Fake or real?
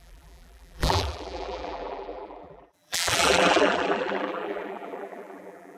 fake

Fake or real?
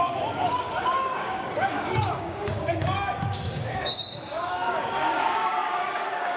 fake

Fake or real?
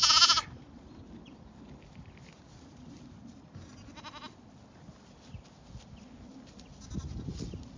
real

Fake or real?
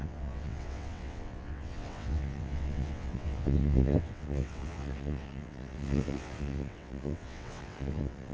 fake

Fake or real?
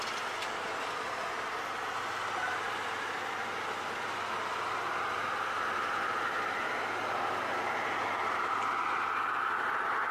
real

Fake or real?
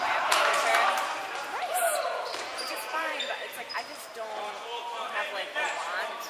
fake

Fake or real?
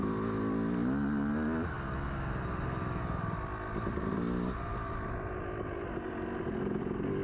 real